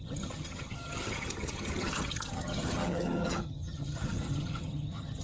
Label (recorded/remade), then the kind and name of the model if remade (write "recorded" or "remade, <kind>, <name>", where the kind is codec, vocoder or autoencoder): remade, vocoder, HiFi-GAN